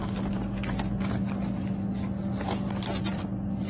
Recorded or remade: recorded